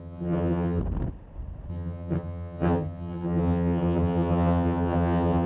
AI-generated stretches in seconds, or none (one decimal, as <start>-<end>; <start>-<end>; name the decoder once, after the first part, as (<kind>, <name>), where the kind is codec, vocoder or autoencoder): 0.0-0.8 (vocoder, HiFi-GAN); 1.7-5.5